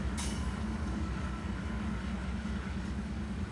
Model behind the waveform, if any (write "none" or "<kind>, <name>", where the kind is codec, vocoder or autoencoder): codec, DAC